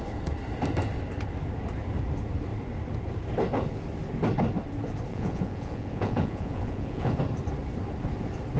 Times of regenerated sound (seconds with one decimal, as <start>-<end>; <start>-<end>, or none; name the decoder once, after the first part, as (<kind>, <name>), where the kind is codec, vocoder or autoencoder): 5.1-7.2 (vocoder, Vocos)